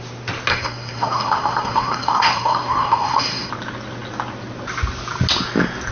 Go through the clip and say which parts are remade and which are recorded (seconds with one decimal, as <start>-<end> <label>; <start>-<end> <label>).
0.0-0.5 recorded; 0.5-3.5 remade; 3.5-5.9 recorded